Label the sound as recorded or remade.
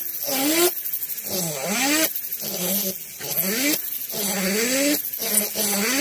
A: recorded